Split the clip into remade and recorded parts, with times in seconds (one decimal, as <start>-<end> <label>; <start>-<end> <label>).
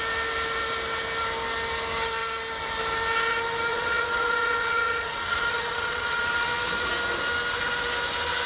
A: 0.0-3.7 recorded; 3.7-6.9 remade; 6.9-8.5 recorded